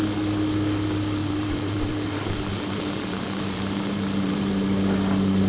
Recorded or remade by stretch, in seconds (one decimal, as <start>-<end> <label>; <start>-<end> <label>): 0.0-1.2 recorded; 1.2-4.5 remade; 4.5-5.5 recorded